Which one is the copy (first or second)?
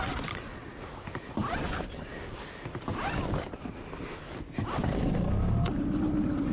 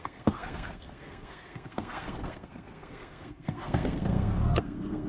second